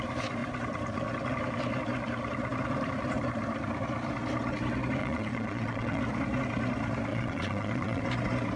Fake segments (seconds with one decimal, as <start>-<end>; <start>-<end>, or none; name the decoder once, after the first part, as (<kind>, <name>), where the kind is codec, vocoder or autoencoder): 5.0-6.0 (vocoder, Vocos); 7.1-8.0